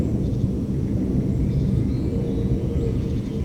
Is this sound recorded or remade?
remade